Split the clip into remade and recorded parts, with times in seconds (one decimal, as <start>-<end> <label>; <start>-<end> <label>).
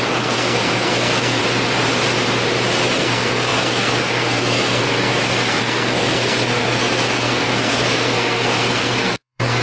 0.0-1.4 remade; 1.4-2.9 recorded; 2.9-9.6 remade